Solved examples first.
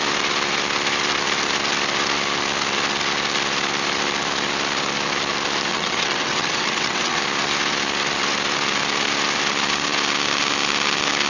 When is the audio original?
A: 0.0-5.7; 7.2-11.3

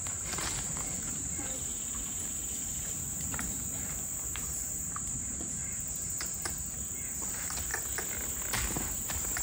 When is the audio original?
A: 7.7-9.0

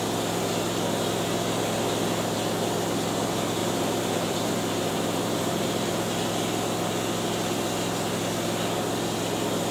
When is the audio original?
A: 0.0-3.6; 5.9-9.7

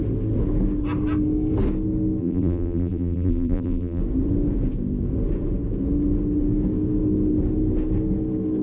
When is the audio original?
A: 0.0-2.2; 4.0-8.6

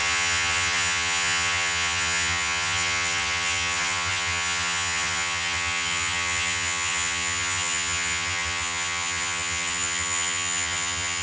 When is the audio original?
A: none

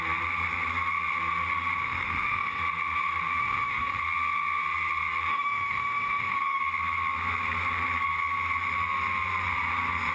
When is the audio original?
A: 0.0-1.8; 2.6-3.4; 4.0-5.3; 6.6-10.1

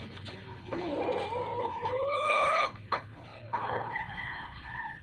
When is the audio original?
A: 0.9-1.6

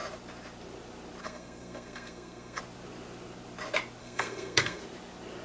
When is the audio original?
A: 0.0-1.2; 2.6-4.0; 4.8-5.4